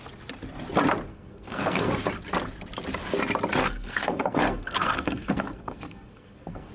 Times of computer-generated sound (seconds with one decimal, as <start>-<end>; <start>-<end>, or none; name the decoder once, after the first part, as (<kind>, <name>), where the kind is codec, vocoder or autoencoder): 1.1-1.9 (codec, SNAC); 3.6-6.7